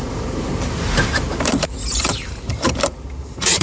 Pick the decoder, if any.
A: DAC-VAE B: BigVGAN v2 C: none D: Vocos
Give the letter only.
B